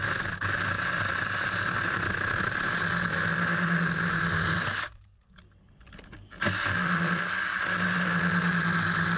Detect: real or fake real